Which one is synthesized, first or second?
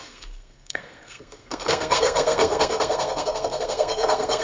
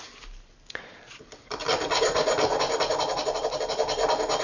first